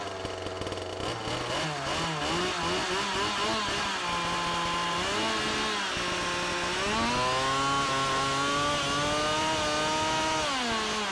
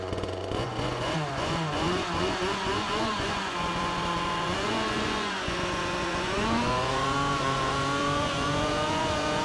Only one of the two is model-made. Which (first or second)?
second